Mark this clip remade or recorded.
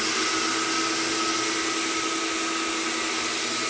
recorded